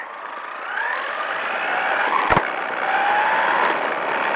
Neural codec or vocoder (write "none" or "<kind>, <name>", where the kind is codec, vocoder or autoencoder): none